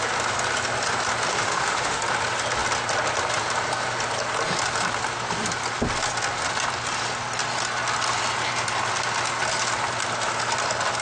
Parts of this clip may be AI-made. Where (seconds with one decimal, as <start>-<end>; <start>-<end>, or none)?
1.3-2.0